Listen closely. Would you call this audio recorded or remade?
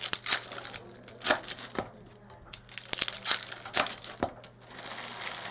recorded